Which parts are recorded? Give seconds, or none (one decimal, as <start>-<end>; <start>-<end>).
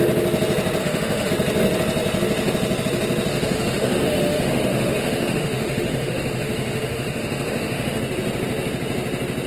0.0-0.8; 1.3-3.3; 8.0-9.5